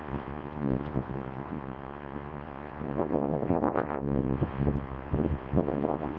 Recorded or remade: remade